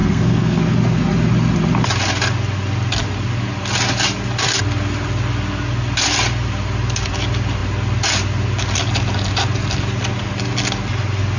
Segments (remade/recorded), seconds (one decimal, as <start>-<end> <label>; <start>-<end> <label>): 0.0-0.6 remade; 0.6-11.4 recorded